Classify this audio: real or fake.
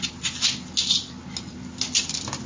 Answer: real